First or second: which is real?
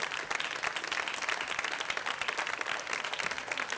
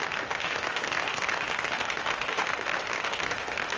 first